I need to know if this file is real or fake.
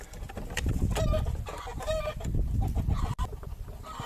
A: real